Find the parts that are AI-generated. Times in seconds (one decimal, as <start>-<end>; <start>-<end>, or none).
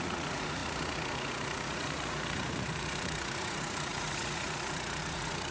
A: 0.0-5.5